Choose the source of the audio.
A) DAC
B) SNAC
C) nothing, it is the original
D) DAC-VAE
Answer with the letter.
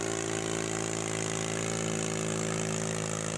C